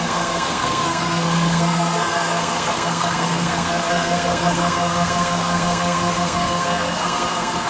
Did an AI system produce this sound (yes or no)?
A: yes